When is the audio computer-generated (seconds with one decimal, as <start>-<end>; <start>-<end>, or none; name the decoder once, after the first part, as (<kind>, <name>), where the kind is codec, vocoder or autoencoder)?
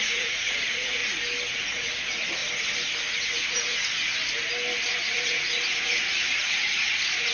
0.0-1.0 (vocoder, Vocos); 1.6-2.4; 3.0-4.2; 4.9-7.3